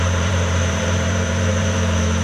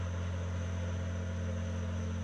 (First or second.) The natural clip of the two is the second